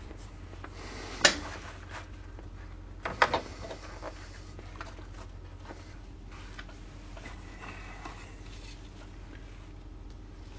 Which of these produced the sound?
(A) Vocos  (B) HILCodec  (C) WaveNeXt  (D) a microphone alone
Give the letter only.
D